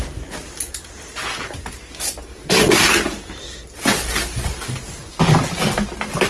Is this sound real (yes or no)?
yes